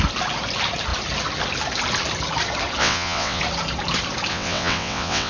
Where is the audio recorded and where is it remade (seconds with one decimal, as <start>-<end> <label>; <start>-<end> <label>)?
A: 0.0-2.8 recorded; 2.8-3.4 remade; 3.4-4.3 recorded; 4.3-5.3 remade